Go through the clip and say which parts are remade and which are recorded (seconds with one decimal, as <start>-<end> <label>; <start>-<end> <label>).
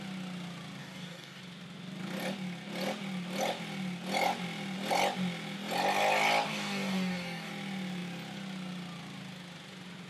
0.0-0.8 recorded; 0.8-1.4 remade; 1.4-6.5 recorded; 6.5-7.5 remade; 7.5-10.1 recorded